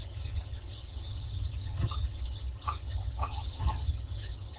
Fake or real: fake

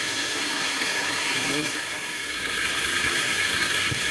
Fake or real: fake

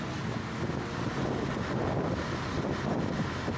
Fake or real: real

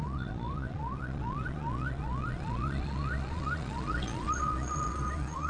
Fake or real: fake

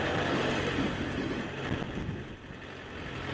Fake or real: real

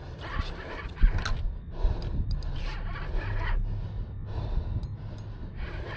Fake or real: real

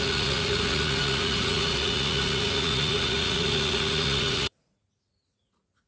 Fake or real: fake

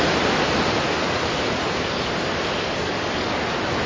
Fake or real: real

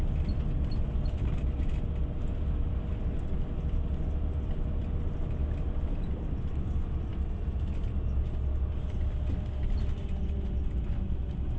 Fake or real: real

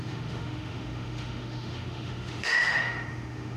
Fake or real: fake